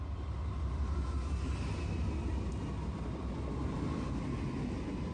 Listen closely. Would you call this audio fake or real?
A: real